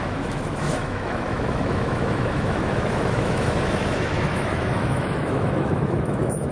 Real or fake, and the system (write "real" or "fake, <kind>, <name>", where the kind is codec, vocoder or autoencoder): fake, autoencoder, DAC-VAE